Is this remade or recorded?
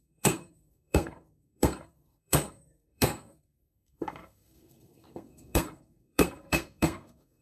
remade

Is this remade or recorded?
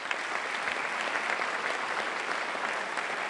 recorded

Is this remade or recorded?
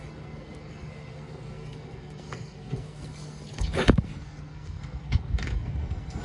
remade